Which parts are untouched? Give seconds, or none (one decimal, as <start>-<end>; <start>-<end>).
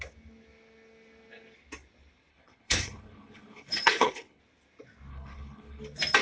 0.0-2.3; 4.4-5.1; 5.8-6.2